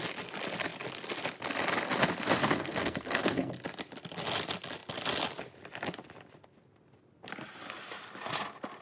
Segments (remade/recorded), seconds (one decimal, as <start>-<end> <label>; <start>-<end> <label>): 0.0-2.4 recorded; 2.4-3.5 remade; 3.5-8.8 recorded